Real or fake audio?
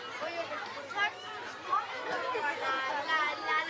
real